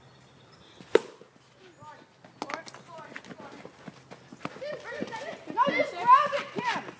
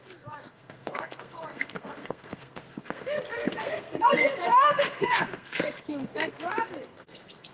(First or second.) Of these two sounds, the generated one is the second